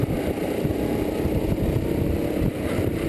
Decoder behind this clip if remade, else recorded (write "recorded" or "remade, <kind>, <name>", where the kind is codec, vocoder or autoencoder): recorded